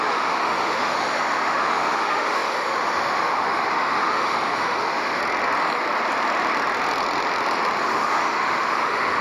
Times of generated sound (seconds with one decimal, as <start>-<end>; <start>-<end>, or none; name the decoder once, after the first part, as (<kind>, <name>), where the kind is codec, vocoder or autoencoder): 0.0-5.2 (autoencoder, DAC-VAE); 7.8-9.2